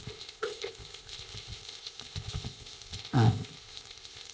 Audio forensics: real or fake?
fake